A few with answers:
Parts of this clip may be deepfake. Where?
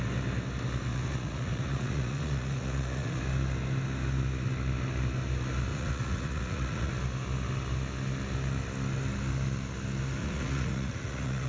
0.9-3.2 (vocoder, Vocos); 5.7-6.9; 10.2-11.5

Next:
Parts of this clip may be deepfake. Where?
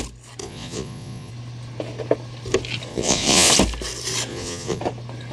0.4-1.3 (vocoder, Vocos); 2.9-3.5; 4.3-4.8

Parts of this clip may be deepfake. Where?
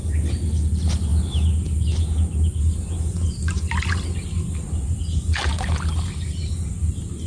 none